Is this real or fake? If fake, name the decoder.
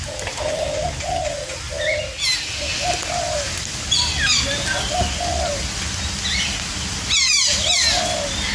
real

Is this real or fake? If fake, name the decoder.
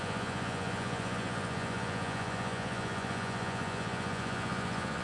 fake, vocoder, Vocos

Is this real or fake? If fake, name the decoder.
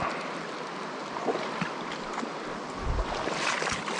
real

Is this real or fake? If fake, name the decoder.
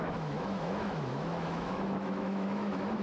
fake, autoencoder, DAC-VAE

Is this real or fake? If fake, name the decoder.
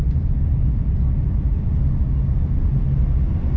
real